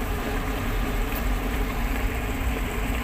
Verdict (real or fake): fake